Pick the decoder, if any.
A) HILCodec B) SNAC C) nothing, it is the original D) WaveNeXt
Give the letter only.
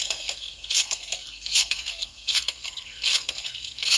B